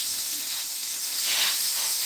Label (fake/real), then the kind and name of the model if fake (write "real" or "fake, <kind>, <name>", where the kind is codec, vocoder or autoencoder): fake, autoencoder, DAC-VAE